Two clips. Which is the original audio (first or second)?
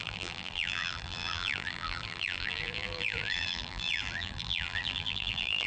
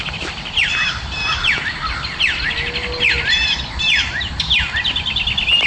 second